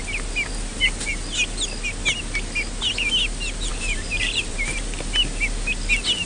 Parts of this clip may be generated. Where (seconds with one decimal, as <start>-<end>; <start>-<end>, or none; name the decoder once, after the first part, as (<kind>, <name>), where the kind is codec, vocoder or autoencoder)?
3.7-4.8 (vocoder, BigVGAN v2)